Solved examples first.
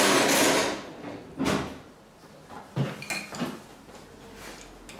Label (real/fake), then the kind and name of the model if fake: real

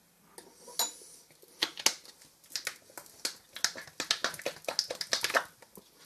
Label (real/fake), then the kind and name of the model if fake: real